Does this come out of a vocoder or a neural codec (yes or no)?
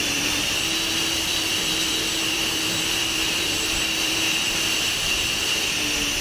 yes